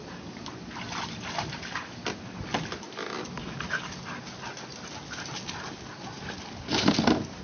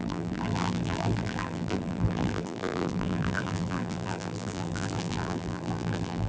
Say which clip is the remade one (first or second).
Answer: second